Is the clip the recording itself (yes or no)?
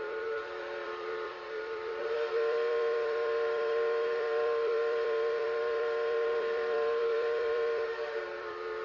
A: no